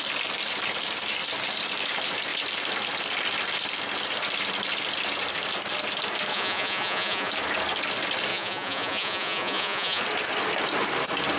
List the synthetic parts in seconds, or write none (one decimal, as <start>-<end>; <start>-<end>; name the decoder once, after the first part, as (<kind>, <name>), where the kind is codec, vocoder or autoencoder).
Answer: 6.3-7.3 (vocoder, Vocos); 8.3-10.0